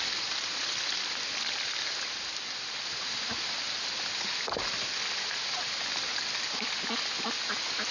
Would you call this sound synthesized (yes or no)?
no